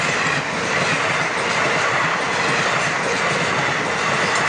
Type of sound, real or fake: real